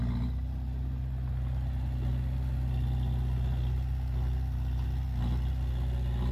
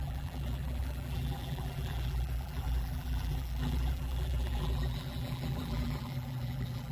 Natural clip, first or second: first